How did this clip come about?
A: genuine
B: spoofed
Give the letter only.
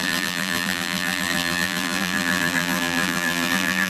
B